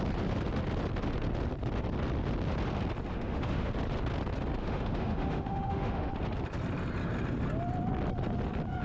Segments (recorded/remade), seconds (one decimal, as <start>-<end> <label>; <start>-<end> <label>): 0.0-3.1 recorded; 3.1-3.7 remade; 3.7-4.6 recorded; 4.6-6.1 remade; 6.1-8.8 recorded